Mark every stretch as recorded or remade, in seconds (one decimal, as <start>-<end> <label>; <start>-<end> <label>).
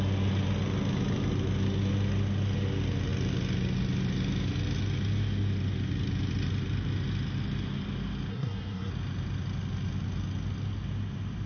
0.0-8.3 recorded; 8.3-8.9 remade; 8.9-11.5 recorded